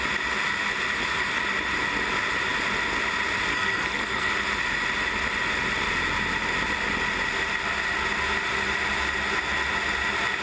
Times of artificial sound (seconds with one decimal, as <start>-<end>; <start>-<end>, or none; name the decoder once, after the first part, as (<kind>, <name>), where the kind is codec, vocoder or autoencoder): 3.5-4.3 (codec, SNAC)